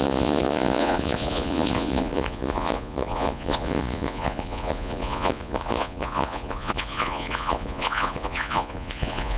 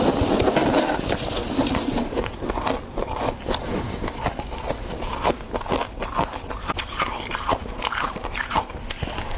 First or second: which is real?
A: second